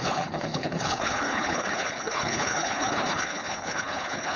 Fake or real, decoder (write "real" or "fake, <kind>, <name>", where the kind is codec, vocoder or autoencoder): fake, codec, HILCodec